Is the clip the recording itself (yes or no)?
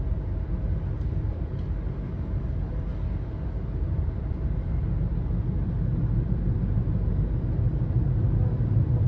no